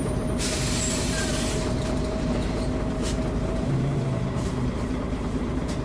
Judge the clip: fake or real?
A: fake